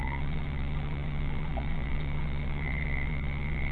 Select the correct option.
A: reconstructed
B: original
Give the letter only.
A